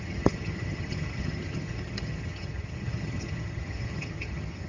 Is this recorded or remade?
remade